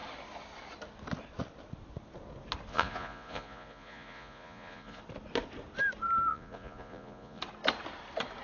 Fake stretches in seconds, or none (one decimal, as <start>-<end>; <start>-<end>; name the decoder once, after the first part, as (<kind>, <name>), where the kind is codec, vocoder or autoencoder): 2.7-5.0 (vocoder, Vocos); 6.3-7.4